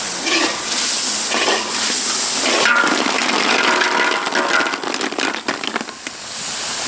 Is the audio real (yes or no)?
yes